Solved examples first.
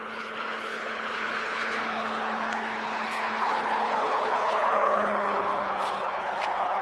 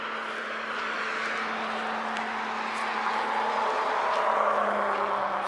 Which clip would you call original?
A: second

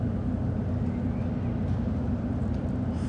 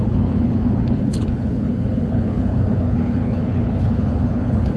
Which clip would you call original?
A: first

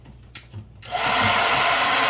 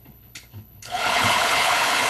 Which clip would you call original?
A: first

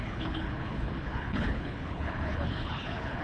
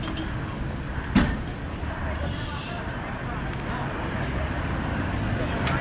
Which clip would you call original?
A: second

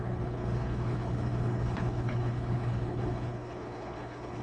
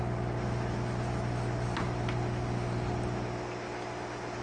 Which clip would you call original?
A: second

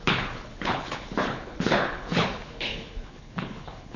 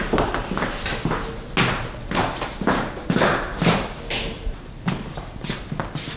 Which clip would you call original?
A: second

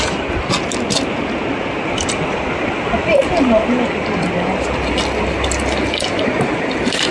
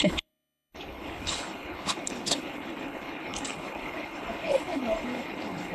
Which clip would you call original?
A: first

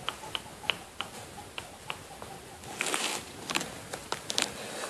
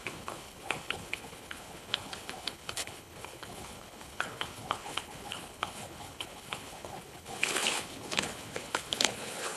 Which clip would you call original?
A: first